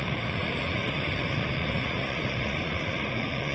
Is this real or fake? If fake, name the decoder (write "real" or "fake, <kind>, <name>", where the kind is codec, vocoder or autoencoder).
fake, vocoder, Vocos